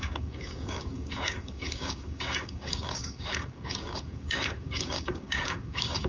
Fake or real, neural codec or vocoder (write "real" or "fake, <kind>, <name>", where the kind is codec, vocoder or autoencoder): fake, codec, DAC